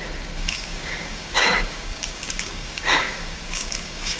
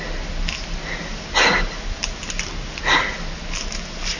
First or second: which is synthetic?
first